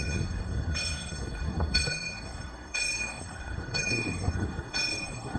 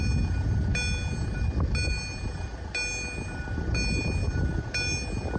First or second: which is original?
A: second